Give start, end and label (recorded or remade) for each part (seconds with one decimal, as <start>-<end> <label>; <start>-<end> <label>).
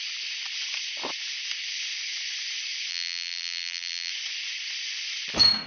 0.0-2.9 recorded; 2.9-4.1 remade; 4.1-5.7 recorded